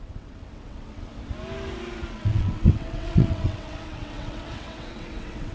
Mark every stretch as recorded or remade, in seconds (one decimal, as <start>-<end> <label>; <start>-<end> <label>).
0.0-1.1 remade; 1.1-2.1 recorded; 2.1-5.5 remade